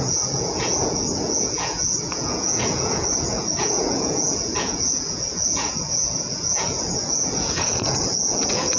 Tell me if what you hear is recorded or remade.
remade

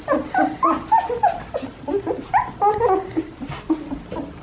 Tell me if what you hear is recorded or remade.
recorded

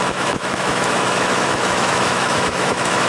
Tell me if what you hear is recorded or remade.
remade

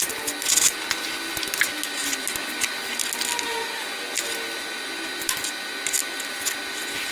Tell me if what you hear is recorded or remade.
recorded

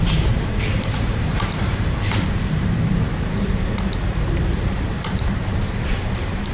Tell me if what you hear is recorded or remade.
remade